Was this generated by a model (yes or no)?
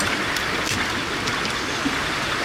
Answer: no